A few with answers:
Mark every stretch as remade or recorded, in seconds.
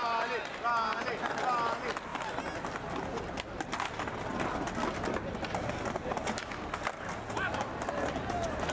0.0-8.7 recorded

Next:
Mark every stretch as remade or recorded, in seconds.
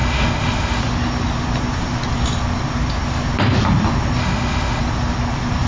0.0-0.8 remade; 0.8-4.2 recorded; 4.2-4.8 remade; 4.8-5.7 recorded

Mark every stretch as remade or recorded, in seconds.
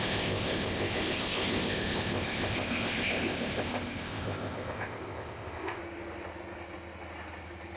0.0-5.8 remade; 5.8-7.8 recorded